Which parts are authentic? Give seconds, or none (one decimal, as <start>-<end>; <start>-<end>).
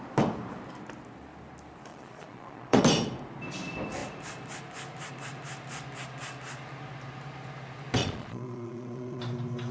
0.0-1.9; 2.8-8.0; 9.2-9.7